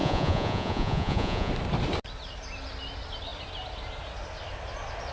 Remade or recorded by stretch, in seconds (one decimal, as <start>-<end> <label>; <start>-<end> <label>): 0.0-1.5 remade; 1.5-5.1 recorded